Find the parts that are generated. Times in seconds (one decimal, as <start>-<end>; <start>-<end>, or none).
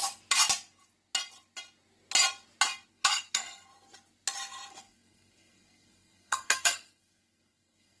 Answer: 2.9-3.7; 4.7-8.0